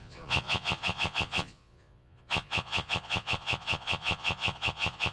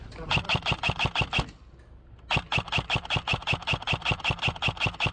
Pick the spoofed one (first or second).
first